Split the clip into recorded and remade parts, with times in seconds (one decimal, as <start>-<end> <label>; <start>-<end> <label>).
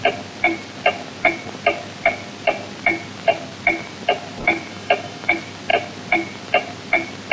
0.0-4.7 recorded; 4.7-5.3 remade; 5.3-7.3 recorded